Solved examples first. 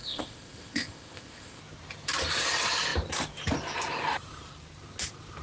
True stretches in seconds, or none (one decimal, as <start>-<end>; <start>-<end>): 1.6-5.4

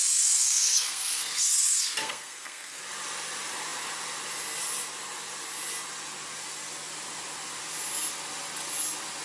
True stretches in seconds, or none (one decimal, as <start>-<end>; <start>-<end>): 2.8-9.2

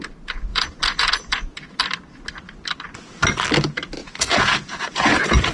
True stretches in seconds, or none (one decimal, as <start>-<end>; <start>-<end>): 0.0-0.5; 1.8-4.0

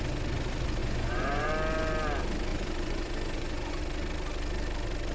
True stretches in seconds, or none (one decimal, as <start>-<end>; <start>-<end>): 0.0-0.8; 1.5-2.5; 3.8-5.1

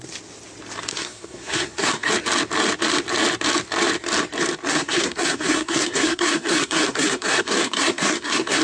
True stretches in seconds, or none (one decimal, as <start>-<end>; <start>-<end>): 0.0-0.9; 2.1-4.7

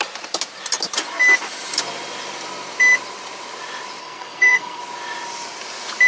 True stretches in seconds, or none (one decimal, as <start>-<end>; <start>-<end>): 0.0-4.0; 4.8-6.1